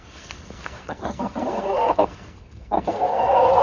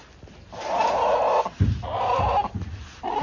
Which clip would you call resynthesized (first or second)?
first